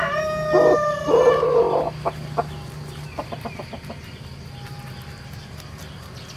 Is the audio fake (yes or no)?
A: no